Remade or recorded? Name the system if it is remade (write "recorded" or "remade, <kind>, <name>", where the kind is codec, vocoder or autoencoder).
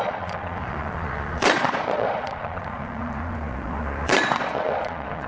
remade, vocoder, Vocos